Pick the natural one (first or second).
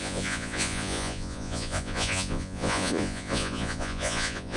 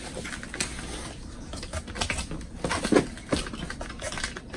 second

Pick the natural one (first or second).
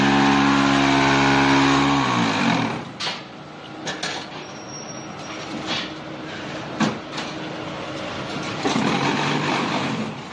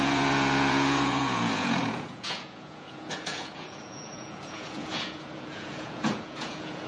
first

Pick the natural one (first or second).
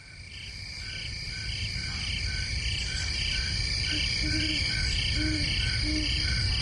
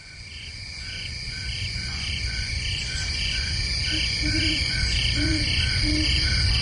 first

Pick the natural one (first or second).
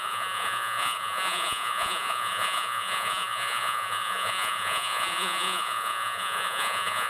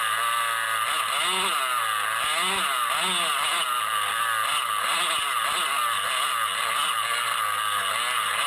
second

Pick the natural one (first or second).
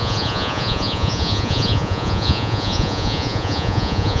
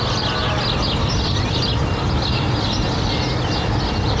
second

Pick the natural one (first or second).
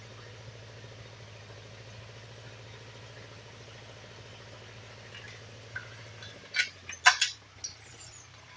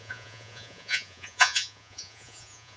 first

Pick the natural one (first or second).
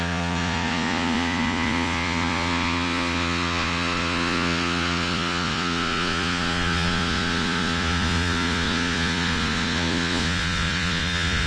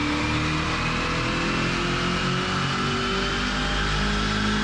second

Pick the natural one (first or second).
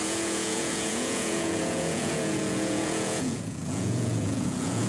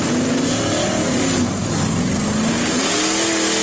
second